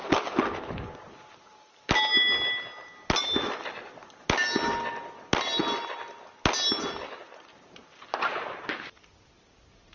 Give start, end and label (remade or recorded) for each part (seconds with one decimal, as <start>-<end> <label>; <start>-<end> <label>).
0.0-9.9 recorded

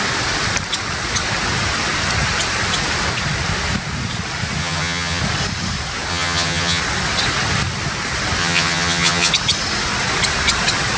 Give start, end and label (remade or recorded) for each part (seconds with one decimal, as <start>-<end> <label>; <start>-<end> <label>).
0.0-4.6 recorded; 4.6-5.2 remade; 5.2-6.1 recorded; 6.1-6.8 remade; 6.8-8.4 recorded; 8.4-9.3 remade; 9.3-11.0 recorded

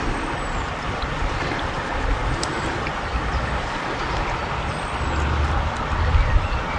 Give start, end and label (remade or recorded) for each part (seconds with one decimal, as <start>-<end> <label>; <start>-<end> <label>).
0.0-4.4 remade; 4.4-6.8 recorded

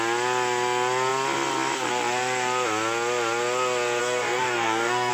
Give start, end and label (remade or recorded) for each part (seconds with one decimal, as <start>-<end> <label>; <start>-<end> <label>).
0.0-4.0 recorded; 4.0-5.1 remade

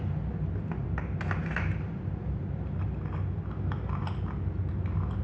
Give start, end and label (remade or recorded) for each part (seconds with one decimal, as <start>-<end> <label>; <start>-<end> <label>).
0.0-5.2 recorded

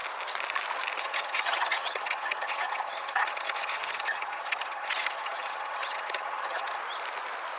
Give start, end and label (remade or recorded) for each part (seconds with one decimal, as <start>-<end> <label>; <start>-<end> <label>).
0.0-1.0 recorded; 1.0-6.8 remade; 6.8-7.6 recorded